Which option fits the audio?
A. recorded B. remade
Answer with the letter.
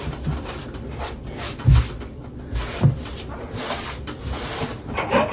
B